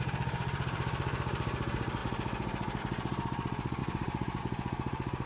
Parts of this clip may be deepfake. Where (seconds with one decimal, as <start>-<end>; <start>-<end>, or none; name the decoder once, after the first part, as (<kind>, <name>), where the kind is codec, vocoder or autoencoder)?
0.0-5.3 (vocoder, BigVGAN v2)